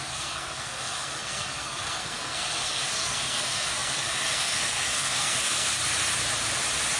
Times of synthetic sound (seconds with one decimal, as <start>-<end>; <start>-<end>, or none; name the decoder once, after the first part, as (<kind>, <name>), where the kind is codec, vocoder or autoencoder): 0.0-5.7 (codec, SNAC)